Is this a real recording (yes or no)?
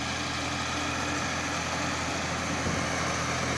yes